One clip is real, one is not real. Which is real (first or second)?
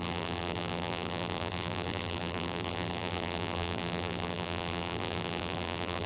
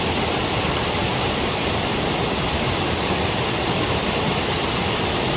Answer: second